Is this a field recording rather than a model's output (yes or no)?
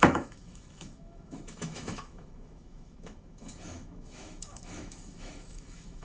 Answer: no